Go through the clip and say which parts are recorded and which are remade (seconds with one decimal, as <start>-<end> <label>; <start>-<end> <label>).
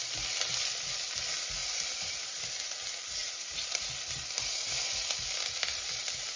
0.0-1.6 recorded; 1.6-2.5 remade; 2.5-3.2 recorded; 3.2-3.8 remade; 3.8-6.4 recorded